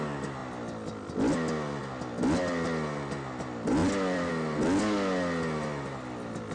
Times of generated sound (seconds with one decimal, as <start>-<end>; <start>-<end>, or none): 3.8-4.3

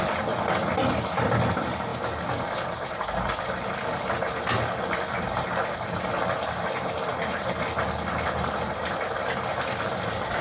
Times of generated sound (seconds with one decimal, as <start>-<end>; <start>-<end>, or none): none

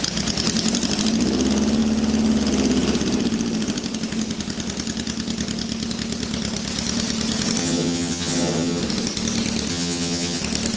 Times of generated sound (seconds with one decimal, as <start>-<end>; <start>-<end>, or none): 7.6-8.8; 9.7-10.4

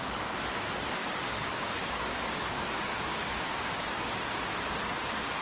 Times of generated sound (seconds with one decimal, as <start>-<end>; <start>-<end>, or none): 1.0-3.9

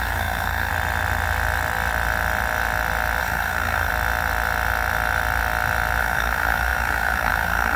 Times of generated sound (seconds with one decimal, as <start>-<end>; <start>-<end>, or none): 0.0-0.7; 3.2-3.9; 6.0-7.8

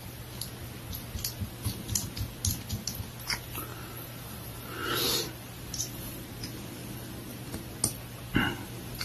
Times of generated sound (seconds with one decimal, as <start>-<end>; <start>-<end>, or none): 3.7-5.8; 6.8-7.7

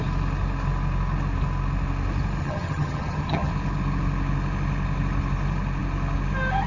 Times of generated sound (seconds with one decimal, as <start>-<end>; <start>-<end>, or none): 2.4-3.5

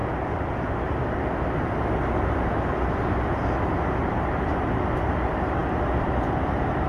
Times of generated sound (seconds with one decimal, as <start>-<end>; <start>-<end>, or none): 0.0-0.9; 5.6-6.2